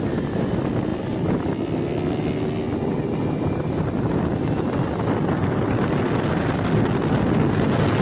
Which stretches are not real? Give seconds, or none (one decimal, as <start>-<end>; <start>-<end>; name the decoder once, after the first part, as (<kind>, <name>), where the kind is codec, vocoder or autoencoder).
none